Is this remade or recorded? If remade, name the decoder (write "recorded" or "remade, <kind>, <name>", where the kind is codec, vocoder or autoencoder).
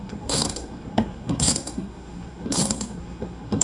remade, codec, SNAC